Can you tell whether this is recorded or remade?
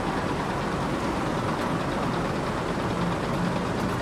recorded